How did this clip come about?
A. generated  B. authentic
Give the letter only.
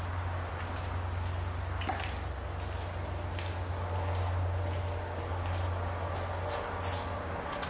B